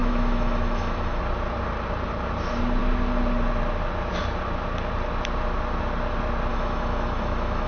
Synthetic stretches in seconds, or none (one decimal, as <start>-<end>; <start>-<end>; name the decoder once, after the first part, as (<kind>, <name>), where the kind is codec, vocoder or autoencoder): 0.0-1.2 (autoencoder, DAC-VAE); 6.5-7.7